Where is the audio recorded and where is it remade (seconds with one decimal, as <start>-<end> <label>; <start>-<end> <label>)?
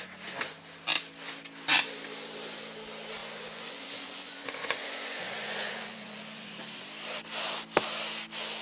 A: 0.0-3.2 recorded; 3.2-6.6 remade; 6.6-8.6 recorded